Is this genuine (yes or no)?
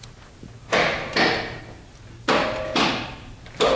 yes